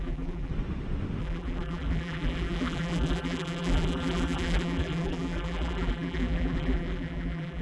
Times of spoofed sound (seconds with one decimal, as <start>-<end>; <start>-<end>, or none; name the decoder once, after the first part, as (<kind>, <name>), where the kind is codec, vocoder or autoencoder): 0.0-0.5 (vocoder, BigVGAN v2); 1.2-7.6